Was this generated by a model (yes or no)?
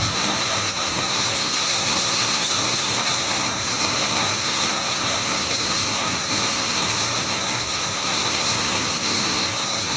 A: yes